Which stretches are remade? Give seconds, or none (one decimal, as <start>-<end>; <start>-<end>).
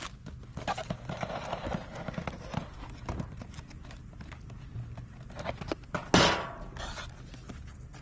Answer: none